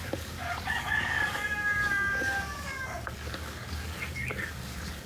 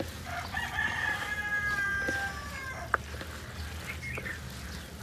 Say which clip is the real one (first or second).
second